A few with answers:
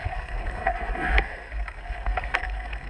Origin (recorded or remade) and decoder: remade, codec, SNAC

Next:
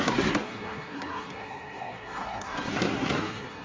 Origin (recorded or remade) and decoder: remade, codec, SNAC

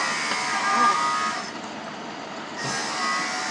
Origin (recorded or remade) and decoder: recorded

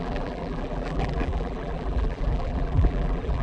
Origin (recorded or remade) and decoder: remade, vocoder, BigVGAN v2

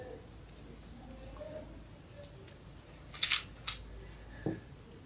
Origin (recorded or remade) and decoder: recorded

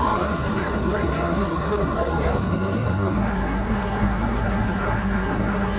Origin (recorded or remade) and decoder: remade, codec, SNAC